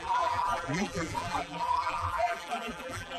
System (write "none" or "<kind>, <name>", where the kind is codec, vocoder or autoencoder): vocoder, BigVGAN v2